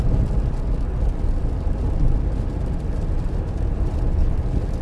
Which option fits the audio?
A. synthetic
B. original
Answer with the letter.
B